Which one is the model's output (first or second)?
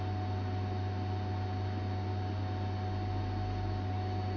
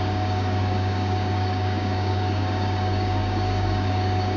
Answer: second